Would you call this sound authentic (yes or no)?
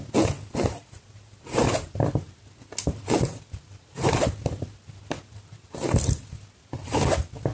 yes